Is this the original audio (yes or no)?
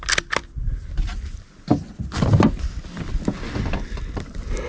yes